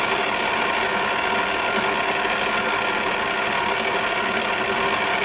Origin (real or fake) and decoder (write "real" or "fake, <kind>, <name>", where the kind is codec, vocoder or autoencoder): real